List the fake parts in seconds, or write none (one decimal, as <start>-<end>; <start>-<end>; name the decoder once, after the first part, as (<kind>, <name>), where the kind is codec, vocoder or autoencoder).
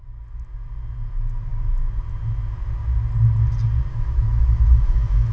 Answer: 3.9-5.3 (autoencoder, DAC-VAE)